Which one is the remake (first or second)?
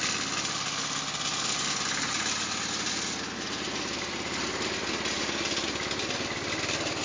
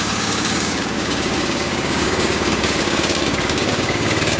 second